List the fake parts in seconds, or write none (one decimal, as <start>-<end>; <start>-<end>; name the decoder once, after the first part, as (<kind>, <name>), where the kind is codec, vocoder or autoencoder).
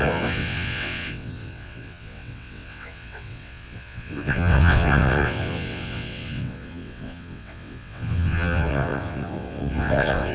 0.0-10.3 (vocoder, WaveNeXt)